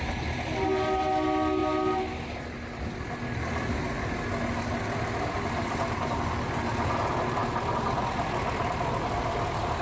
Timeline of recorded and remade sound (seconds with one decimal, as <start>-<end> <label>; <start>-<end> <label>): 0.0-9.8 recorded